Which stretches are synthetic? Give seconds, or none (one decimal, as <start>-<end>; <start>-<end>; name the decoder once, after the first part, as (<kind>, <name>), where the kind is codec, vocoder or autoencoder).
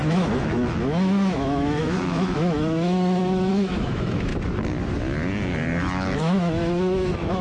0.0-4.3 (autoencoder, DAC-VAE); 5.8-7.4